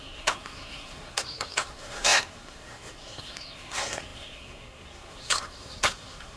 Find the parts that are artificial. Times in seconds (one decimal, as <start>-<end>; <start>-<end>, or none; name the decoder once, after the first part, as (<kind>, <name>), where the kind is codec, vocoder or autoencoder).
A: 0.0-6.4 (codec, SNAC)